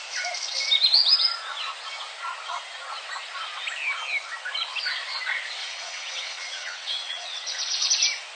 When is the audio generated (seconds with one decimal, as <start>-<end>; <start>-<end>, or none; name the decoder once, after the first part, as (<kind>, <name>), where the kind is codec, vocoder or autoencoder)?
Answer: 5.6-7.9 (vocoder, WaveNeXt)